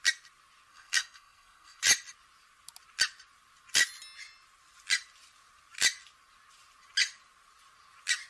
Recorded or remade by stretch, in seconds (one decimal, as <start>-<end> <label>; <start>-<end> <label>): 0.0-0.7 recorded; 0.7-1.8 remade; 1.8-8.3 recorded